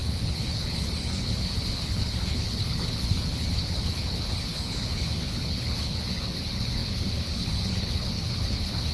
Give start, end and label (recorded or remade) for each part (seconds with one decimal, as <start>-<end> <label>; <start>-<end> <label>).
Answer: 0.0-8.9 remade

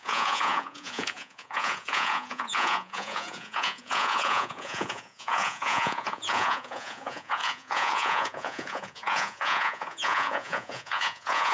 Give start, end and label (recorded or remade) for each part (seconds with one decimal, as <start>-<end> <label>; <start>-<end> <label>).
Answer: 0.0-11.5 remade

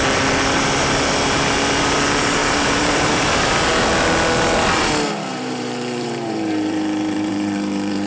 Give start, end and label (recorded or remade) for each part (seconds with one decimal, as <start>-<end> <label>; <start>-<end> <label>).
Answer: 0.0-2.4 recorded; 2.4-3.1 remade; 3.1-5.3 recorded; 5.3-8.1 remade

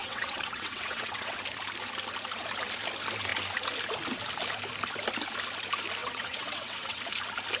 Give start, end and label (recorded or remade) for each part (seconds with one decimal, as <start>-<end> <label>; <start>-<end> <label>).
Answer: 0.0-1.4 remade; 1.4-6.0 recorded; 6.0-7.0 remade; 7.0-7.6 recorded

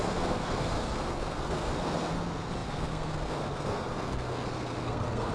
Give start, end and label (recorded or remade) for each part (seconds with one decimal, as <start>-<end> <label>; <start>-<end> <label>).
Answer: 0.0-5.3 remade

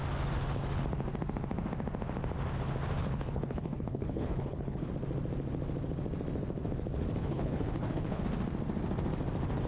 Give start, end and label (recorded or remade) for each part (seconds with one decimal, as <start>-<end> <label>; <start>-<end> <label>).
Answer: 0.0-3.0 recorded; 3.0-4.9 remade; 4.9-7.2 recorded; 7.2-8.2 remade; 8.2-9.7 recorded

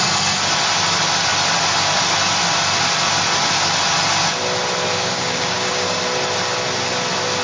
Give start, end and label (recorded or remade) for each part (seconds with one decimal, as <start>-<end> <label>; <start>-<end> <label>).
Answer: 0.0-4.9 recorded; 4.9-6.0 remade; 6.0-7.4 recorded

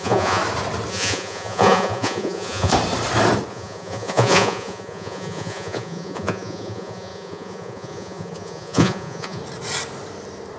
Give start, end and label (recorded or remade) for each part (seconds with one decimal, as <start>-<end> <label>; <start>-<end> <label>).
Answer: 0.0-0.4 remade; 0.4-0.9 recorded; 0.9-2.7 remade; 2.7-3.5 recorded; 3.5-9.4 remade; 9.4-10.6 recorded